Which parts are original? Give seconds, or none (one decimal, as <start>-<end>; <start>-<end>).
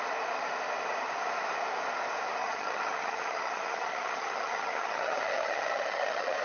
0.0-2.4